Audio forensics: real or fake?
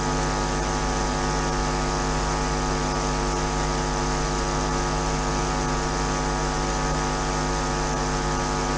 real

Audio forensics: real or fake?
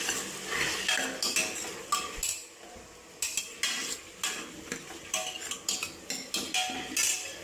real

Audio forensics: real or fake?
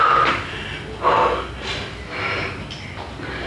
real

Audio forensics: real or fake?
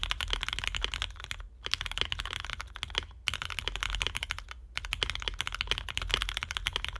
real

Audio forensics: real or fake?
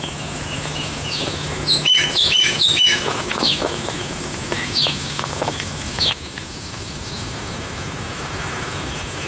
fake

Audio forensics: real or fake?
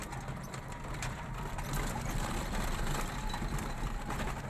real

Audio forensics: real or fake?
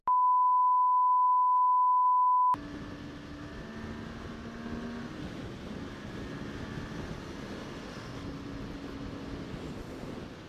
real